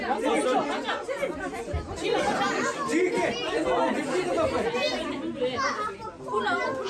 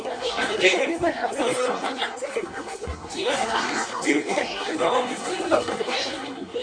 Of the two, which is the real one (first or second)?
first